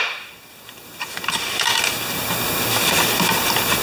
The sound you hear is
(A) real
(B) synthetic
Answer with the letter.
A